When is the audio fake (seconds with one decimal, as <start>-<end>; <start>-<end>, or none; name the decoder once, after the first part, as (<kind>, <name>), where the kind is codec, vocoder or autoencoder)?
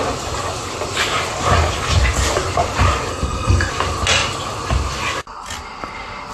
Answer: 3.1-3.7 (codec, SNAC)